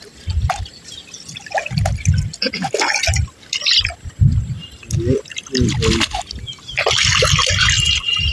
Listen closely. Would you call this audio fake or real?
real